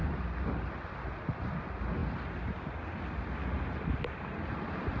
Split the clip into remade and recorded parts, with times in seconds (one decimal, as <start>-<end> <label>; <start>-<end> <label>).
0.0-5.0 recorded